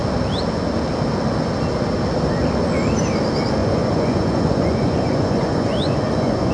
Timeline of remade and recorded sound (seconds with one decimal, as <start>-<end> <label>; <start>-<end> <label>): 0.0-3.6 recorded; 3.6-6.5 remade